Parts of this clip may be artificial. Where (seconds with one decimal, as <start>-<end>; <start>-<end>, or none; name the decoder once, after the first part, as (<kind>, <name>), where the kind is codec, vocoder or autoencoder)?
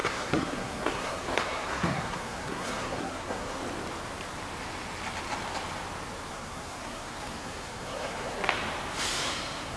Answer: 0.0-3.6 (codec, SNAC); 6.3-8.4; 9.0-9.8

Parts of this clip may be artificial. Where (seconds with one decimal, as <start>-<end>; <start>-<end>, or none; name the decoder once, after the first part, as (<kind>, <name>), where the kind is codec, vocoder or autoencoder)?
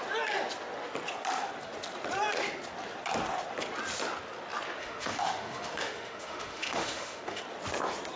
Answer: 4.8-7.4 (autoencoder, DAC-VAE)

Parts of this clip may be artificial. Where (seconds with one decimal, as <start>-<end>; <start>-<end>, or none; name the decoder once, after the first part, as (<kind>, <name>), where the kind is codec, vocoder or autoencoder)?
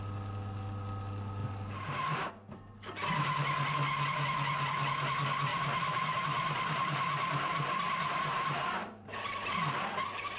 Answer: 1.4-2.3 (vocoder, BigVGAN v2); 5.5-9.5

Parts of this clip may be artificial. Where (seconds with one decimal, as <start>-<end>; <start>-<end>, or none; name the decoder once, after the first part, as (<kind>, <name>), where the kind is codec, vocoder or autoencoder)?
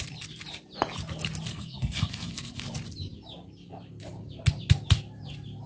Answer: 1.5-2.6 (codec, SNAC)